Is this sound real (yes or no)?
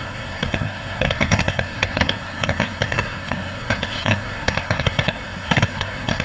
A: no